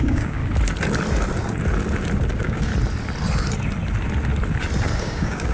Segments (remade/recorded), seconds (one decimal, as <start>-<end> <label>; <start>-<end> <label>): 0.0-0.4 remade; 0.4-2.3 recorded; 2.3-2.7 remade; 2.7-5.0 recorded; 5.0-5.5 remade